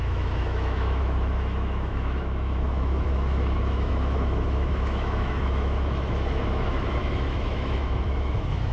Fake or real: fake